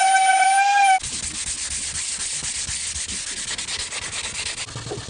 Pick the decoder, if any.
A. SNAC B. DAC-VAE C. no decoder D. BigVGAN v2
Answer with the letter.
C